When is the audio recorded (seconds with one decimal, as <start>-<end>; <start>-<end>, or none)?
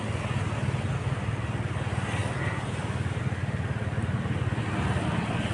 0.0-5.5